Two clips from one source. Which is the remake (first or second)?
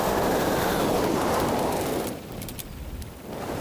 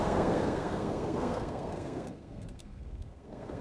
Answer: second